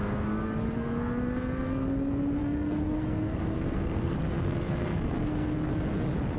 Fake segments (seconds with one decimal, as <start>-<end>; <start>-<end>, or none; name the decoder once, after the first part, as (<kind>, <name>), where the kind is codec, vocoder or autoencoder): 2.4-5.7 (codec, SNAC)